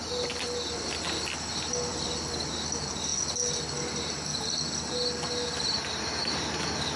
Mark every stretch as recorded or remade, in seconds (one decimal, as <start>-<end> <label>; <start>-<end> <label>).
0.0-7.0 recorded